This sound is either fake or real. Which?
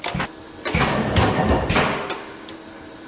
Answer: real